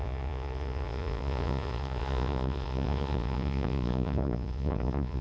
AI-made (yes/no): yes